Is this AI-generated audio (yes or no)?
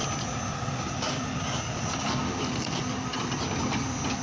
no